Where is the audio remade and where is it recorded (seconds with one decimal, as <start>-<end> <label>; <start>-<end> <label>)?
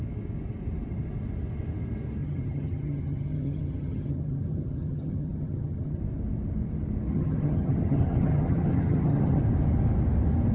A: 0.0-2.2 recorded; 2.2-6.0 remade; 6.0-7.1 recorded; 7.1-9.4 remade; 9.4-10.5 recorded